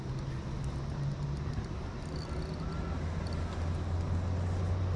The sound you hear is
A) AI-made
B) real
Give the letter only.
B